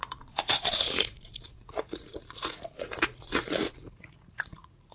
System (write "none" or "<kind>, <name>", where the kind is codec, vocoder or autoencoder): vocoder, Vocos